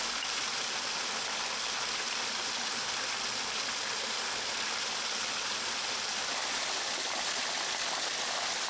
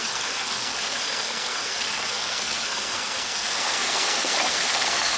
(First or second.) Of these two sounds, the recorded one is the first